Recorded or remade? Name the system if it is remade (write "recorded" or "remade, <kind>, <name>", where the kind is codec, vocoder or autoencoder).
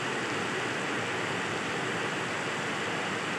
recorded